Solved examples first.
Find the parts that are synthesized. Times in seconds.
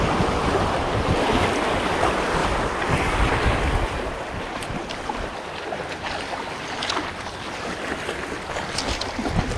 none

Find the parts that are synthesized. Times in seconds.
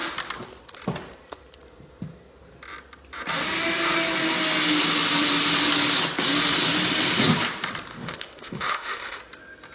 7.9-9.2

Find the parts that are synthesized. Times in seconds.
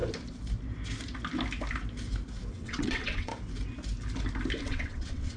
2.5-3.3; 4.6-5.4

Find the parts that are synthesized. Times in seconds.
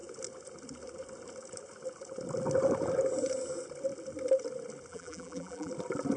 4.9-5.7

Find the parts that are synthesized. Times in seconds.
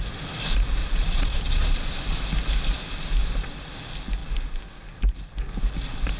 0.8-2.0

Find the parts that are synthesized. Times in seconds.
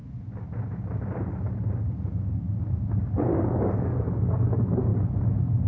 3.4-4.9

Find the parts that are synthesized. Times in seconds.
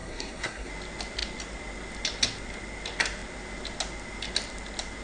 0.0-0.7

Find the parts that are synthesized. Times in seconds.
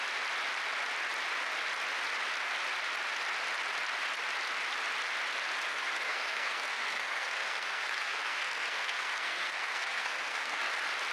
5.7-10.7